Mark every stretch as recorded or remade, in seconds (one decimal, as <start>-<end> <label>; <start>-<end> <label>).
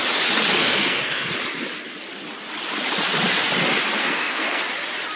0.0-0.6 recorded; 0.6-1.3 remade; 1.3-4.0 recorded; 4.0-4.6 remade; 4.6-5.2 recorded